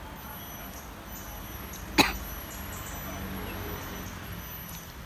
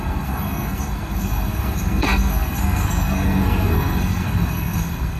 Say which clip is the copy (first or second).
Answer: second